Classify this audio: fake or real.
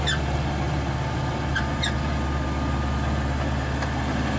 real